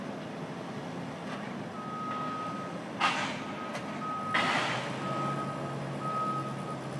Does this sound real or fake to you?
real